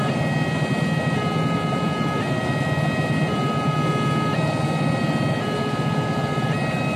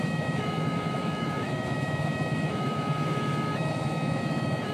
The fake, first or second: second